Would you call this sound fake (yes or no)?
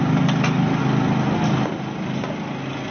no